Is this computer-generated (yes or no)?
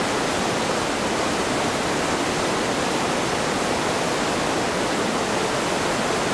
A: no